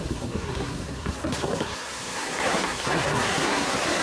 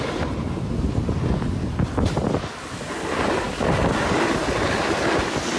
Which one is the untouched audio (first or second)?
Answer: second